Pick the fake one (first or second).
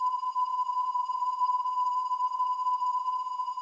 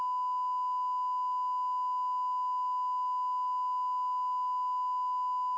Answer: first